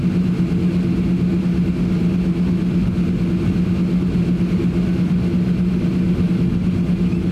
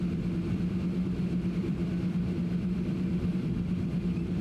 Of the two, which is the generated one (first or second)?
second